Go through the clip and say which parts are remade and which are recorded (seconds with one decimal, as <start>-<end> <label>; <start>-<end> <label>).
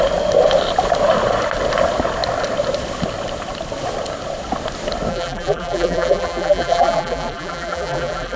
0.0-5.1 recorded; 5.1-8.4 remade